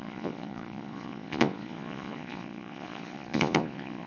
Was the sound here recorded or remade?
remade